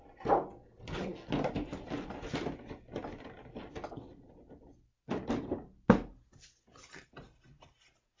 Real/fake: real